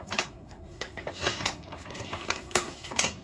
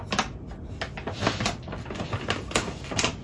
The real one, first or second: second